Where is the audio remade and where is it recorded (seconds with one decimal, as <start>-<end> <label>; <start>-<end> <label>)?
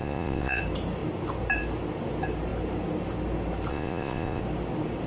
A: 0.0-0.6 remade; 0.6-3.7 recorded; 3.7-4.4 remade; 4.4-5.1 recorded